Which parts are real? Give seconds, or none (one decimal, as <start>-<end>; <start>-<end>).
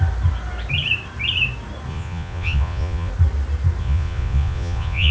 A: 0.0-1.9; 3.1-3.8